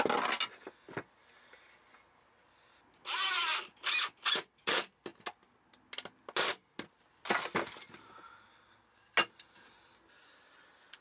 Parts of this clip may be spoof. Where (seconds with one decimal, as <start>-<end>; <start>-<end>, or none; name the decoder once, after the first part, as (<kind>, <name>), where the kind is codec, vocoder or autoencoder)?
none